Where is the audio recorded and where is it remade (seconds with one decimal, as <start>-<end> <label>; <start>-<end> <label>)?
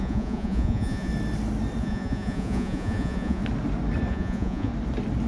0.0-1.1 remade; 1.1-1.8 recorded; 1.8-3.4 remade; 3.4-4.1 recorded; 4.1-4.7 remade; 4.7-5.3 recorded